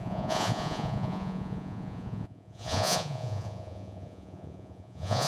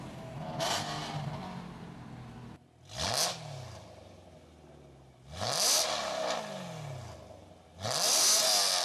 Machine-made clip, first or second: first